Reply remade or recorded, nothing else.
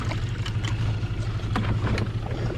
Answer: recorded